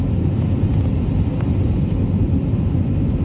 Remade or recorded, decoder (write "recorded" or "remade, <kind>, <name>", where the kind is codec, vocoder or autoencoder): recorded